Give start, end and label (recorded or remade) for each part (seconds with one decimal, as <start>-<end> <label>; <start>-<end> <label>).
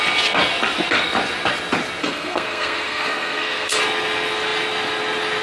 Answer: 0.0-2.0 recorded; 2.0-3.8 remade; 3.8-5.4 recorded